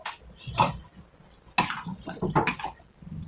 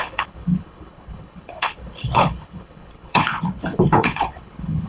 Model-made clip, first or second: second